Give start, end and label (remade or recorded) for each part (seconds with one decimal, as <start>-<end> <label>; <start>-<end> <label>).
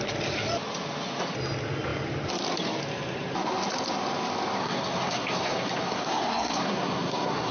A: 0.0-4.6 recorded; 4.6-7.5 remade